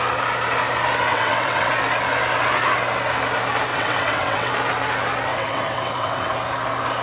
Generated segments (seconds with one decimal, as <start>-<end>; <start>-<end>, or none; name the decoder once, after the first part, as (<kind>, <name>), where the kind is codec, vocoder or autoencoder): 1.1-1.7 (vocoder, WaveNeXt); 3.7-4.5; 5.3-6.3

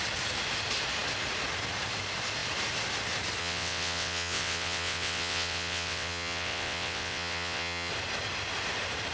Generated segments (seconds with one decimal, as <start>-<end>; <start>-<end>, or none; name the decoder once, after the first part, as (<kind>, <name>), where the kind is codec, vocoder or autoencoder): 3.4-7.9 (vocoder, WaveNeXt)

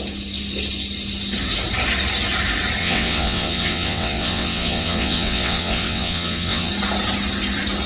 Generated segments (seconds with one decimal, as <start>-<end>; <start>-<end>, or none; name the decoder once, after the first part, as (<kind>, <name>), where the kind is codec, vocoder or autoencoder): 2.8-6.7 (vocoder, WaveNeXt)

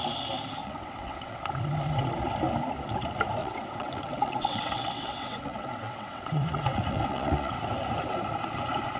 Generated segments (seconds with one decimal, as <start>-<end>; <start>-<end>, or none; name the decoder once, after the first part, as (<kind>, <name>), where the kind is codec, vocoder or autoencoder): 0.6-1.4 (vocoder, WaveNeXt); 3.4-7.5

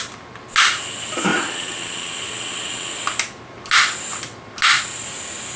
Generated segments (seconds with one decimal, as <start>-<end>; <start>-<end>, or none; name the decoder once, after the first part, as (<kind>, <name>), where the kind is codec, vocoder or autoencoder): 1.3-2.9 (vocoder, WaveNeXt)

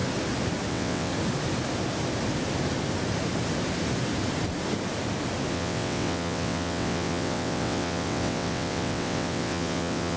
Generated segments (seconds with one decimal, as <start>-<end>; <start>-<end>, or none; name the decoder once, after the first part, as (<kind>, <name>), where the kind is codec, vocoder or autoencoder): 0.7-1.1 (vocoder, WaveNeXt); 5.5-10.2

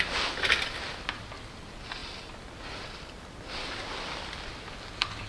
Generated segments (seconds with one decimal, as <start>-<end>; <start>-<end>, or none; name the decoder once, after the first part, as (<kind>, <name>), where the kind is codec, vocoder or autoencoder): none